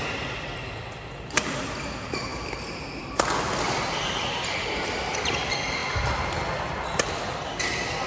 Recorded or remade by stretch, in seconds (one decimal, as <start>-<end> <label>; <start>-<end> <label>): 0.0-8.1 recorded